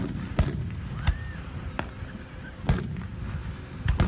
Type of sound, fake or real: real